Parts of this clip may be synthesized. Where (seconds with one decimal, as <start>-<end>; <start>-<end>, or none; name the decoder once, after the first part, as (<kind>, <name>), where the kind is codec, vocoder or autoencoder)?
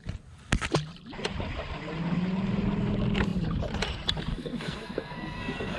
4.3-5.8 (codec, SNAC)